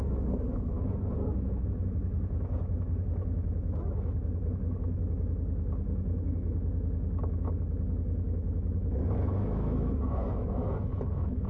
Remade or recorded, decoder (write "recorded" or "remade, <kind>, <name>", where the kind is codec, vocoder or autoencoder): remade, autoencoder, DAC-VAE